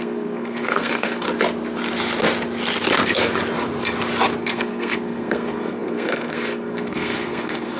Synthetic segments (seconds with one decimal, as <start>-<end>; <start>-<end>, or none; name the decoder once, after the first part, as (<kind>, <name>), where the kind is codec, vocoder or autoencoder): 0.0-1.3 (codec, SNAC); 4.4-7.8